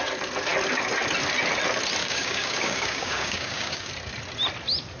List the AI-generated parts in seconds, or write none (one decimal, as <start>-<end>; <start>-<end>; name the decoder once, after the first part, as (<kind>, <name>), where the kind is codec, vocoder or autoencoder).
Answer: 2.0-3.9 (codec, DAC)